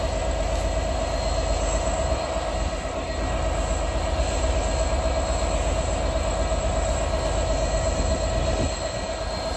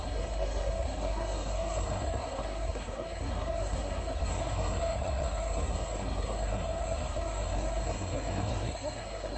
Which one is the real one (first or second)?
first